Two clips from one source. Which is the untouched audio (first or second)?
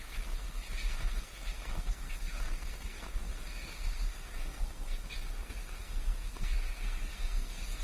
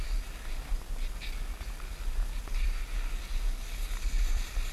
second